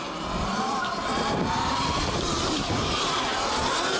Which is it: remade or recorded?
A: remade